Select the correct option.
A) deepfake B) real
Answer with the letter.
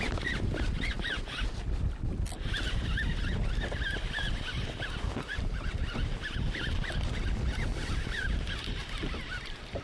B